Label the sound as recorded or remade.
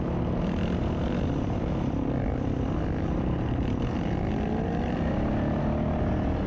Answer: recorded